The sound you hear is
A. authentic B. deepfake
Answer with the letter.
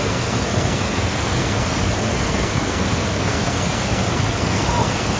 B